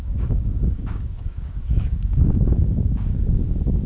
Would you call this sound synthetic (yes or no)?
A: yes